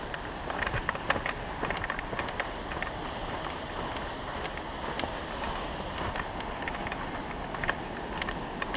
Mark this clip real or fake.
real